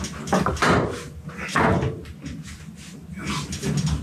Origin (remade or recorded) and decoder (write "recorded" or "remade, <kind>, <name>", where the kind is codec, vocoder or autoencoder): recorded